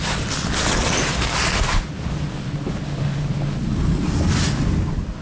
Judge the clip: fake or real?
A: real